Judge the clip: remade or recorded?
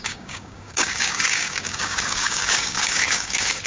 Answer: remade